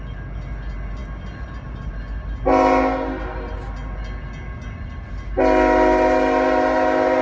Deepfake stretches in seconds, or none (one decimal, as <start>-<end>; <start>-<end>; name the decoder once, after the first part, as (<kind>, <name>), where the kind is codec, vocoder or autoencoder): none